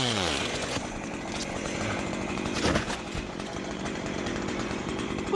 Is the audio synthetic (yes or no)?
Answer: yes